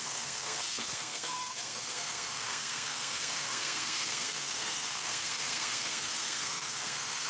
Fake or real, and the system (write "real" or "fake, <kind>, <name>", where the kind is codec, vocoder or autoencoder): fake, codec, SNAC